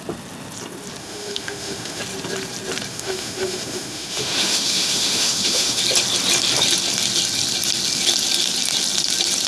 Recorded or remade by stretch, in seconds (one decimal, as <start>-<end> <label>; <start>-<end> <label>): 0.0-1.0 recorded; 1.0-2.0 remade; 2.0-2.9 recorded; 2.9-5.8 remade; 5.8-9.5 recorded